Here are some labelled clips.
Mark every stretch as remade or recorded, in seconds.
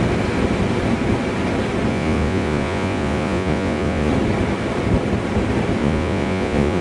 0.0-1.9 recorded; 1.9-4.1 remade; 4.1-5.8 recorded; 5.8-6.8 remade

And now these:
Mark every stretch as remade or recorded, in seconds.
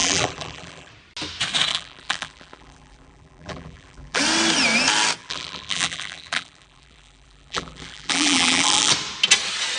0.0-0.9 remade; 0.9-1.7 recorded; 1.7-4.2 remade; 4.2-5.2 recorded; 5.2-8.9 remade; 8.9-9.8 recorded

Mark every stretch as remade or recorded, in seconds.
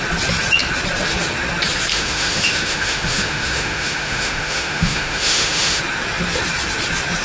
0.0-1.9 recorded; 1.9-5.8 remade; 5.8-7.2 recorded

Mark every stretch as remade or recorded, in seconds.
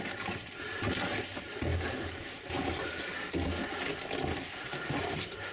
0.0-5.5 recorded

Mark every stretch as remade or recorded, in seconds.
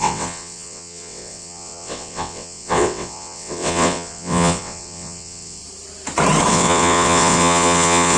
0.0-5.6 remade; 5.6-6.5 recorded; 6.5-8.2 remade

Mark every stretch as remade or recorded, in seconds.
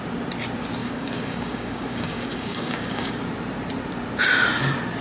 0.0-0.8 recorded; 0.8-3.1 remade; 3.1-5.0 recorded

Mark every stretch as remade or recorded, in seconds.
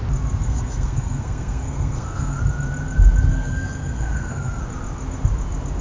0.0-0.4 recorded; 0.4-2.4 remade; 2.4-3.3 recorded; 3.3-4.6 remade; 4.6-5.8 recorded